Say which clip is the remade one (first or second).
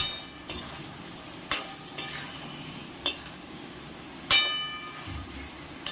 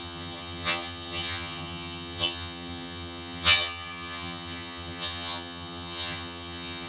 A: second